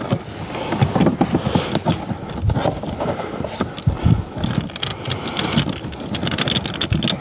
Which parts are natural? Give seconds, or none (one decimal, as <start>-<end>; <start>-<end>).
0.0-7.2